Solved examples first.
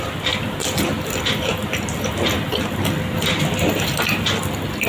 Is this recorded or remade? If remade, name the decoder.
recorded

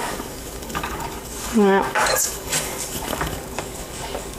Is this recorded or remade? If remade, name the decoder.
remade, codec, DAC